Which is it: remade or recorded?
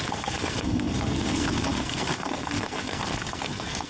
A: remade